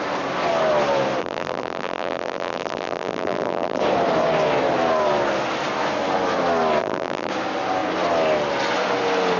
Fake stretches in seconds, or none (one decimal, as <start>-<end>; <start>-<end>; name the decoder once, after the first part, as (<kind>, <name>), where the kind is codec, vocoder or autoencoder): 1.2-3.8 (vocoder, BigVGAN v2); 6.8-7.3